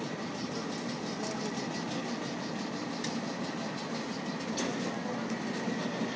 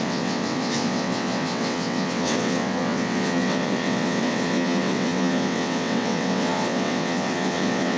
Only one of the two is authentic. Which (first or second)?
first